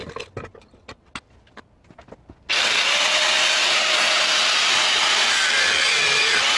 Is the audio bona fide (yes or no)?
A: yes